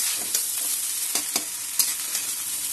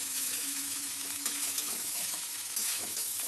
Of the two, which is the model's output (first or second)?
second